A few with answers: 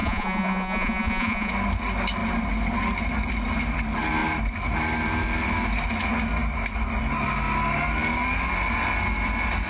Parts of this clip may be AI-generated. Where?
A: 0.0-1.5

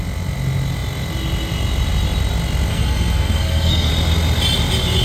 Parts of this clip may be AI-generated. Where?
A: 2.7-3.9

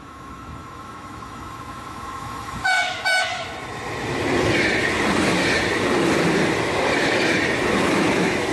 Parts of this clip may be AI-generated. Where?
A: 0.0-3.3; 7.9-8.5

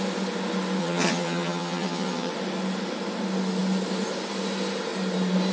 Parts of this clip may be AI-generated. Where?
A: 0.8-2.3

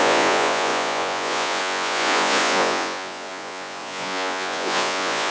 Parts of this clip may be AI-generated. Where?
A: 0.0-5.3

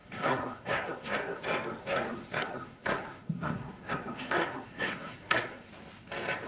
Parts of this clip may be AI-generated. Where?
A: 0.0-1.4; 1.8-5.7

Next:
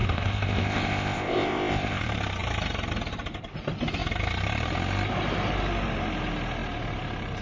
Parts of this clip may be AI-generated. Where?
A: 0.0-2.0

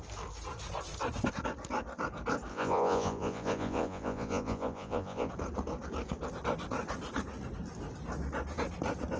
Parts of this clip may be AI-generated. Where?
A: 2.5-5.3